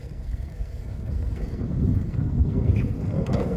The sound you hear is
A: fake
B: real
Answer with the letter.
A